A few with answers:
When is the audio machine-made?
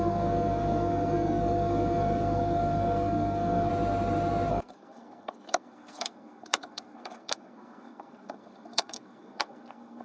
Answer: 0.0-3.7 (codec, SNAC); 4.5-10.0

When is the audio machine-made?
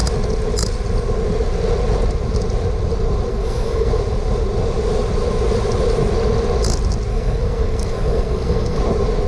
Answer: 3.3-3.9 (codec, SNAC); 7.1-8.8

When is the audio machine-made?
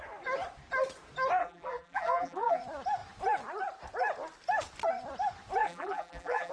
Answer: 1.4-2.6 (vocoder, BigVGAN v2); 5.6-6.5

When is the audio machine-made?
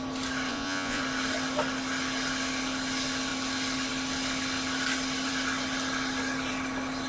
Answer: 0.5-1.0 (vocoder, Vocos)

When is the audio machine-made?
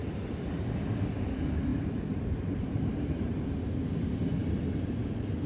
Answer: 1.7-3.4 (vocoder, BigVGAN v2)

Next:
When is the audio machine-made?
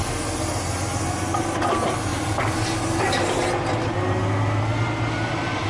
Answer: none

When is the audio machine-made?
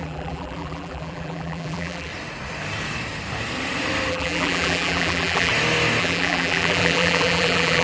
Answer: 0.0-2.1 (vocoder, BigVGAN v2); 4.1-5.5; 6.0-7.8